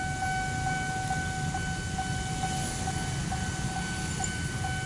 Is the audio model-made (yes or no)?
no